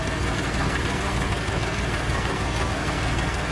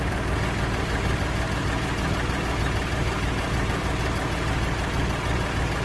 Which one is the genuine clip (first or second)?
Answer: second